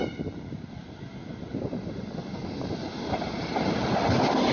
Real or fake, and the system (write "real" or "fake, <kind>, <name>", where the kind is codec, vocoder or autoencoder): real